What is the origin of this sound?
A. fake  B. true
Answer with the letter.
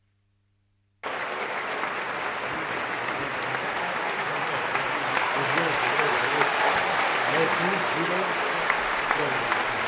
B